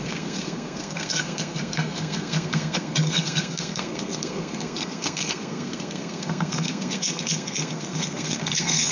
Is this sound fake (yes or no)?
yes